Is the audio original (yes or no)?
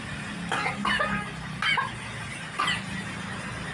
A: yes